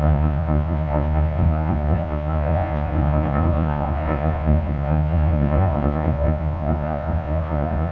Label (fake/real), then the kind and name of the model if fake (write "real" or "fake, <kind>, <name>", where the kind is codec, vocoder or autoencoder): fake, vocoder, Vocos